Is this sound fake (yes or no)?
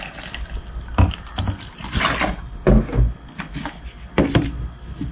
no